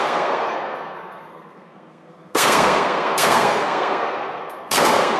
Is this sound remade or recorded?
remade